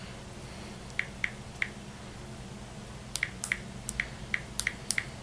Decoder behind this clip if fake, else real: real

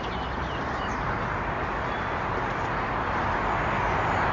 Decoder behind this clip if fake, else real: real